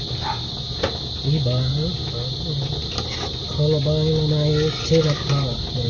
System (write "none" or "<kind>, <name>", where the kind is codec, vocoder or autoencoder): none